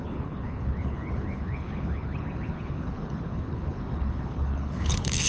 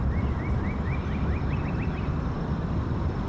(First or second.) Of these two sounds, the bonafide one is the second